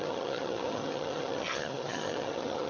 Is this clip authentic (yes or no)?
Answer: no